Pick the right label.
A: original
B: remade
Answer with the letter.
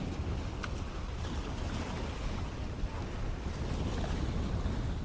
A